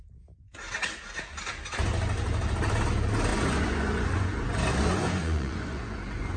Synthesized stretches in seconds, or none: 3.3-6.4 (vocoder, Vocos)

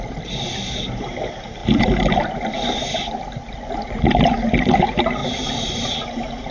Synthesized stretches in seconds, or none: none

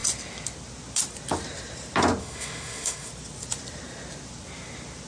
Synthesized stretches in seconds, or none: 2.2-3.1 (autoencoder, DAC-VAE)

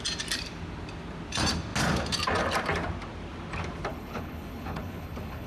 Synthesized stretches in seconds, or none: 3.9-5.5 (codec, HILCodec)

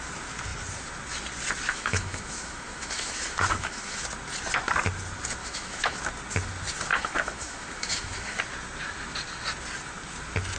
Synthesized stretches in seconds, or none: 1.7-4.0 (autoencoder, DAC-VAE); 5.4-6.0; 6.9-8.4